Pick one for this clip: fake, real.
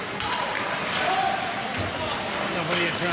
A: real